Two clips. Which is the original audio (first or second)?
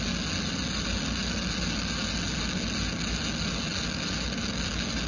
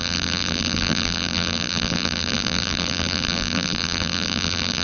first